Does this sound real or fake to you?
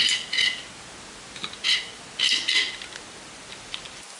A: real